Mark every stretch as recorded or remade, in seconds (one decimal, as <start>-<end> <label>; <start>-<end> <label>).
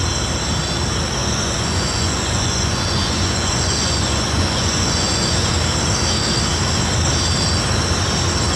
0.0-1.2 recorded; 1.2-5.5 remade; 5.5-8.6 recorded